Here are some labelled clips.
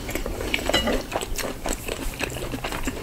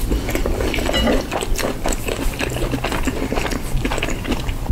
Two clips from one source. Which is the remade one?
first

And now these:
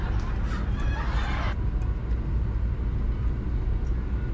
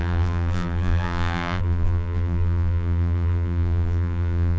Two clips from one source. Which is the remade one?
second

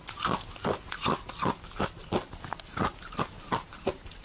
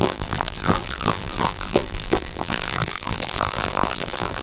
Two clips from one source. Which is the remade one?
second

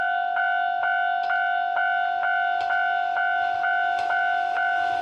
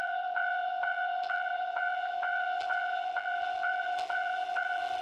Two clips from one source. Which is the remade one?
second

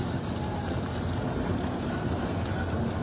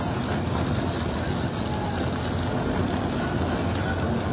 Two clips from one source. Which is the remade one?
first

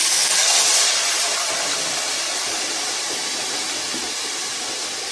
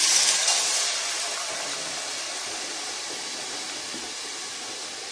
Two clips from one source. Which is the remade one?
first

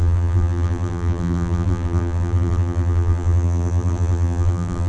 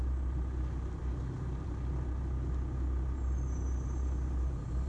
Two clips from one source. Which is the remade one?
first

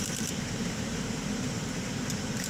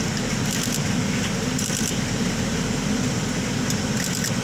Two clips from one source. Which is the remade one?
first